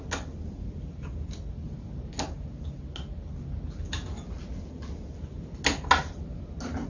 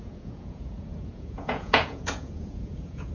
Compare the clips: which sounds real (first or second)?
first